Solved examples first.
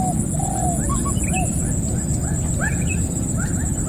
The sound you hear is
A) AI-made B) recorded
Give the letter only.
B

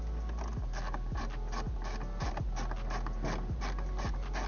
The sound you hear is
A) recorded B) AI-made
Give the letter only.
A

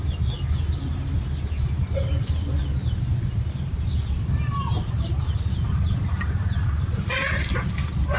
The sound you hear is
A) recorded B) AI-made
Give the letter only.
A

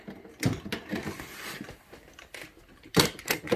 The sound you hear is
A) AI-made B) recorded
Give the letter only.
B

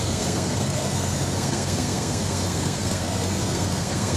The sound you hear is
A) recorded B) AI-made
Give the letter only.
B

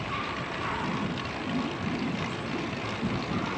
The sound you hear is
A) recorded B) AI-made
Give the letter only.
A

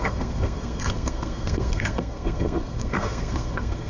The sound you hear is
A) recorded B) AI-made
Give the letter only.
B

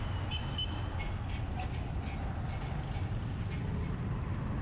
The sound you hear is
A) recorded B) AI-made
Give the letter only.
A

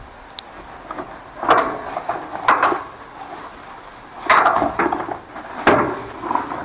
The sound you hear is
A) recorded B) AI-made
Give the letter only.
A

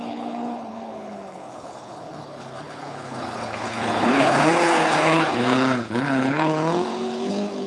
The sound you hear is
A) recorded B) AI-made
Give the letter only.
B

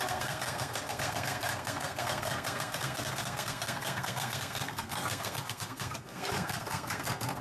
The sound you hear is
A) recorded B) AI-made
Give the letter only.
B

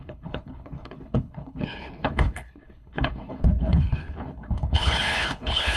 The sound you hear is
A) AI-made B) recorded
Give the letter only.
A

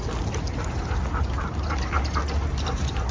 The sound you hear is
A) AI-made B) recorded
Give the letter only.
B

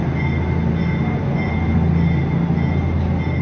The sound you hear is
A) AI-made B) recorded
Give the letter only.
B